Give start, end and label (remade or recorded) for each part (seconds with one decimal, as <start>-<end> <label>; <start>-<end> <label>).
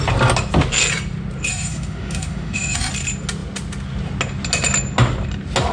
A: 0.0-1.5 recorded; 1.5-2.9 remade; 2.9-5.7 recorded